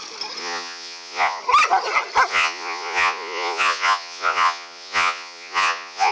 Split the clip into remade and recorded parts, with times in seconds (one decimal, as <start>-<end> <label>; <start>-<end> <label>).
0.0-0.4 recorded; 0.4-1.4 remade; 1.4-2.3 recorded; 2.3-6.1 remade